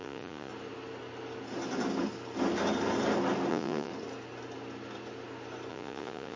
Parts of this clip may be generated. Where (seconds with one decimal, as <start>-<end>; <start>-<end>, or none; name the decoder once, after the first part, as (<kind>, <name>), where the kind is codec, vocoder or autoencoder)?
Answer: 0.0-0.5 (vocoder, Vocos); 3.5-3.9; 5.7-6.4